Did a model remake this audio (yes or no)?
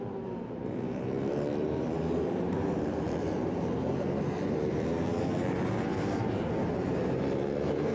yes